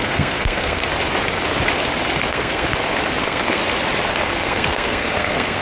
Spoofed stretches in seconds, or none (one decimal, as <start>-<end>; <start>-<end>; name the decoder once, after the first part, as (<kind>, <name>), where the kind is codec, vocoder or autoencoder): 0.0-0.8 (codec, SNAC); 2.3-2.7; 3.2-3.6; 4.2-5.6